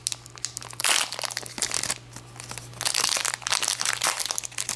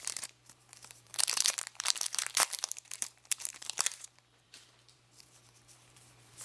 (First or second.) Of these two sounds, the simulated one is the second